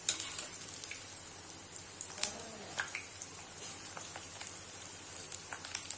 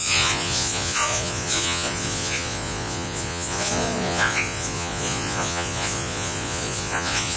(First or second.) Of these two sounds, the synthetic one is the second